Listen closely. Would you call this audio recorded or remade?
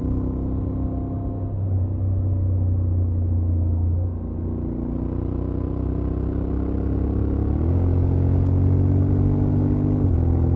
recorded